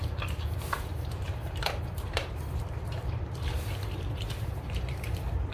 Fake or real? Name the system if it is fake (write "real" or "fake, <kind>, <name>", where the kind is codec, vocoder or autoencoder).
fake, vocoder, BigVGAN v2